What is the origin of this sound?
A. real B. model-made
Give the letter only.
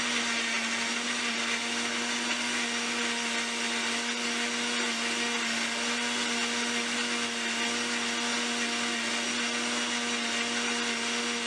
A